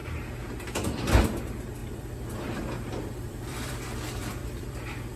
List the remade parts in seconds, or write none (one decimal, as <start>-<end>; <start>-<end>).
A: 1.8-5.2